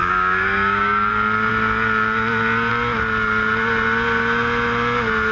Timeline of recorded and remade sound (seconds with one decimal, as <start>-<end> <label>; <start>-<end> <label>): 0.0-1.1 remade; 1.1-5.3 recorded